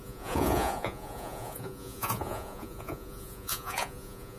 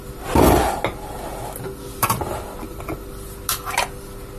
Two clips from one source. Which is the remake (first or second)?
first